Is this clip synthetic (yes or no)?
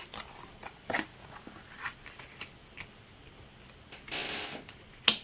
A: no